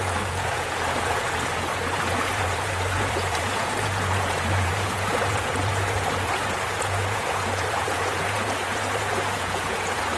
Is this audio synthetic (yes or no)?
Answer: yes